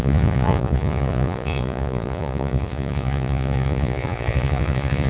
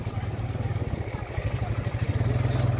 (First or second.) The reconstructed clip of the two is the first